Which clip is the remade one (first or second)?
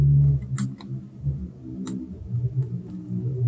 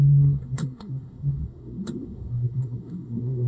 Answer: second